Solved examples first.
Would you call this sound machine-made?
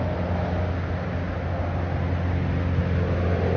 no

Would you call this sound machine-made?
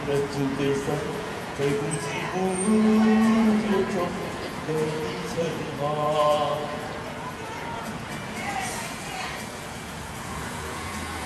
yes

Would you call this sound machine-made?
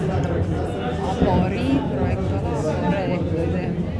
no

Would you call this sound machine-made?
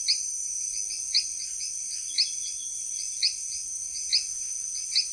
no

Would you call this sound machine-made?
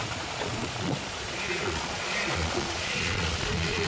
yes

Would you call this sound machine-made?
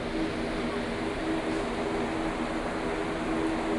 no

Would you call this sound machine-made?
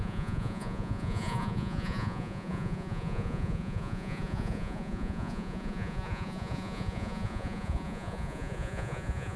yes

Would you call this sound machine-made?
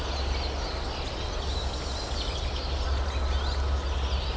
no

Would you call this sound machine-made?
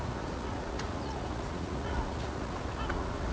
yes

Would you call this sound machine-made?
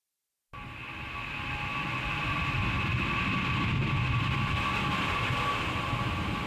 no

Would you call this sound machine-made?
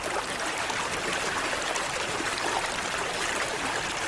no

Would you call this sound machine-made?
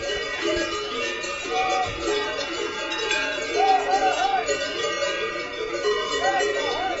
yes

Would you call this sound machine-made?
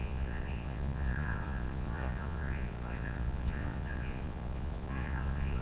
yes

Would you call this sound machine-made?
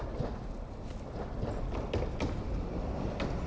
no